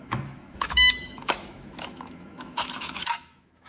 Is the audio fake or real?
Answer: fake